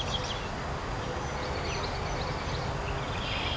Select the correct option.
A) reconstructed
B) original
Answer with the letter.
B